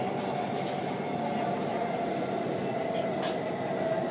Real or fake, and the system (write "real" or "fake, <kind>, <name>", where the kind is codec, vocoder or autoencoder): real